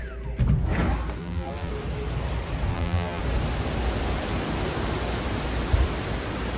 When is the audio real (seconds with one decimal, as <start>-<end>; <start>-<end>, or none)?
0.0-1.2; 1.7-2.7; 3.2-6.6